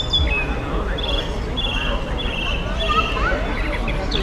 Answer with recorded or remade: recorded